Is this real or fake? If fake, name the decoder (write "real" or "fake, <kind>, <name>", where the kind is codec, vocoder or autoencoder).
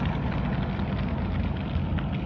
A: real